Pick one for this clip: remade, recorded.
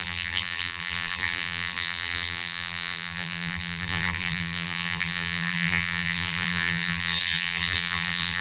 remade